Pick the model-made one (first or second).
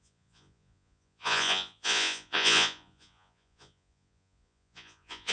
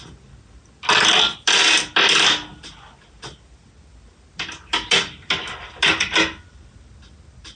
first